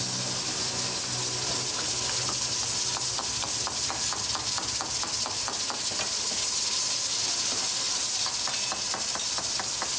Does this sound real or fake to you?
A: real